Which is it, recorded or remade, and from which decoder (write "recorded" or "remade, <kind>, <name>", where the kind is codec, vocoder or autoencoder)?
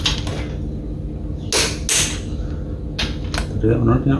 recorded